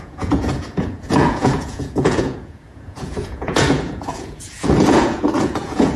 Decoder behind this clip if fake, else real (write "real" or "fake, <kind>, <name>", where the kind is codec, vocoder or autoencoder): fake, vocoder, Vocos